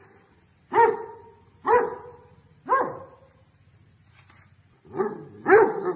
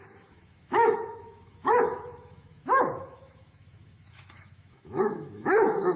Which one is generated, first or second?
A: second